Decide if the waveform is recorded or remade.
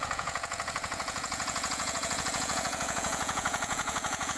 remade